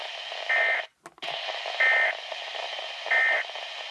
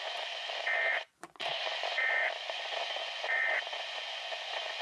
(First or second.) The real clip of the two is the first